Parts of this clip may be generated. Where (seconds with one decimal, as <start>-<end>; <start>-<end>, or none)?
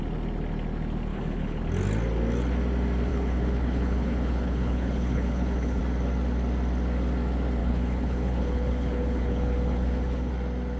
1.1-1.6; 3.1-5.8; 7.6-10.3